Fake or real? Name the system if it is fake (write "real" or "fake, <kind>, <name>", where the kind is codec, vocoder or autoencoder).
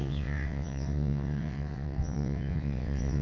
fake, vocoder, WaveNeXt